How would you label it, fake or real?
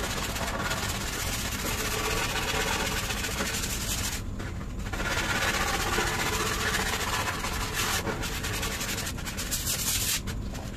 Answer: real